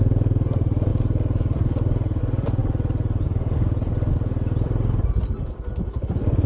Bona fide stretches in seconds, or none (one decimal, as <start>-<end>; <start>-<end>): 0.9-2.2; 2.6-4.1